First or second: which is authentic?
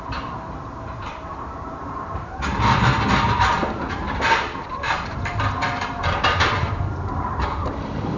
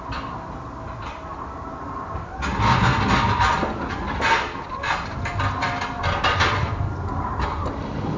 second